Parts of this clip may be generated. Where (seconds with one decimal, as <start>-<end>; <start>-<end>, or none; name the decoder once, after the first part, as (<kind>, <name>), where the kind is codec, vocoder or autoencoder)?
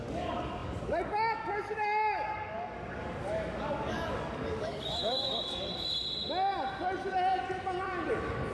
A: 0.0-5.7 (codec, DAC); 8.1-8.5